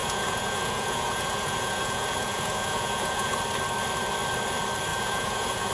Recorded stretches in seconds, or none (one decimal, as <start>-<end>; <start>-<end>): 3.4-4.9